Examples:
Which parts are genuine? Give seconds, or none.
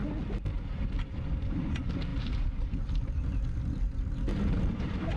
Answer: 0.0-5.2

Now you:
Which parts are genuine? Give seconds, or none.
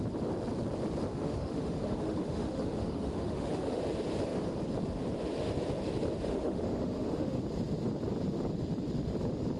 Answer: 0.0-1.1; 3.8-6.3; 7.4-9.6